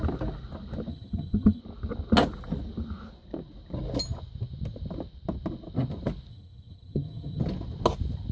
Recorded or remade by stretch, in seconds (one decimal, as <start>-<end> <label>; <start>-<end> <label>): 0.0-0.9 recorded; 0.9-1.6 remade; 1.6-6.3 recorded; 6.3-7.4 remade; 7.4-8.3 recorded